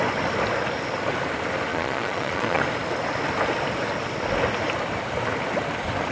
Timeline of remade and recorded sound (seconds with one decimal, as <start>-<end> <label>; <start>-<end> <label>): 0.0-1.7 recorded; 1.7-2.6 remade; 2.6-6.1 recorded